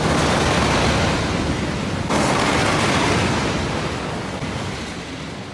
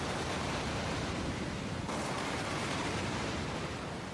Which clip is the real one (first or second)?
first